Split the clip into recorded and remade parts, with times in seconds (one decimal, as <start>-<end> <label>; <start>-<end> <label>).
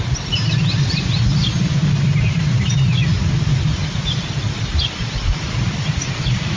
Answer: 0.0-6.6 recorded